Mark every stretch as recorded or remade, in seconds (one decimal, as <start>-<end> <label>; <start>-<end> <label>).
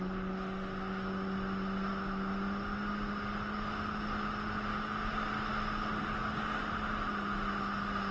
0.0-8.1 recorded